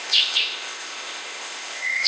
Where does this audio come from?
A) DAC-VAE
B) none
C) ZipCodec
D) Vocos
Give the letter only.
C